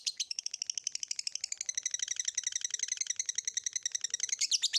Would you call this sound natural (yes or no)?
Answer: yes